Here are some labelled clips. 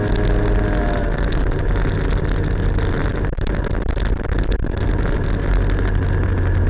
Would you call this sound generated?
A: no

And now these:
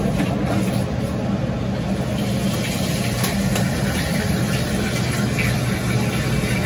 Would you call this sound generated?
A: no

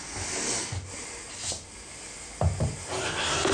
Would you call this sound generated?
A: no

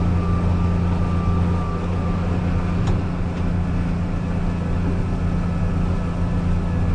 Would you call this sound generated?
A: no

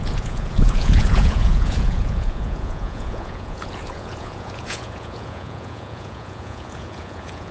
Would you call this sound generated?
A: yes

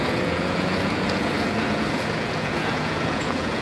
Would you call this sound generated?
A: yes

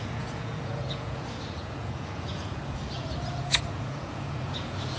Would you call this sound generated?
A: yes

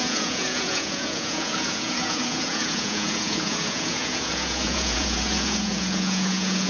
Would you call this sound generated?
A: yes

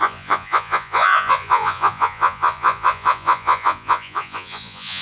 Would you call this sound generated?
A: yes